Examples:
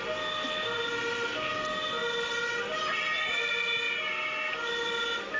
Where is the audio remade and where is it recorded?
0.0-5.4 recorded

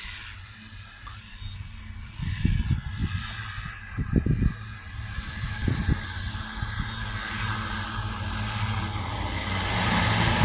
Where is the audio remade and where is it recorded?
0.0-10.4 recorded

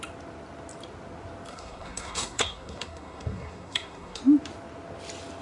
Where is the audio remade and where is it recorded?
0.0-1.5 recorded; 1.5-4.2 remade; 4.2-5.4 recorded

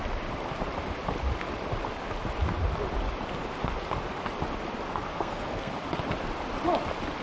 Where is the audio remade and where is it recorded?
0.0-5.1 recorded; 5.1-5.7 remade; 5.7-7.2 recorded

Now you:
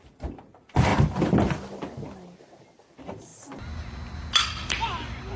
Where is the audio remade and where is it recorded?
0.0-5.4 recorded

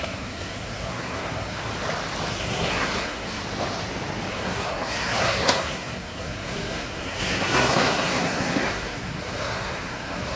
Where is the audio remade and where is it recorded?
0.0-1.7 remade; 1.7-2.3 recorded; 2.3-3.4 remade; 3.4-4.3 recorded; 4.3-10.4 remade

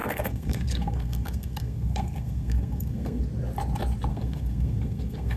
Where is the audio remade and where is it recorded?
0.0-3.2 remade; 3.2-4.1 recorded; 4.1-5.4 remade

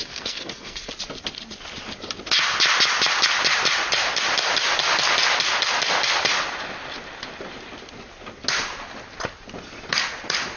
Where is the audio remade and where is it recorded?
0.0-0.9 remade; 0.9-10.6 recorded